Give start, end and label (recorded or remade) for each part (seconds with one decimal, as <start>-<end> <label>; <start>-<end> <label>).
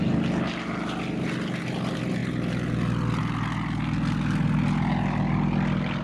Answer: 0.0-6.0 recorded